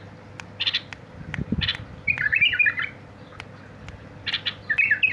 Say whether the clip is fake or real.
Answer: real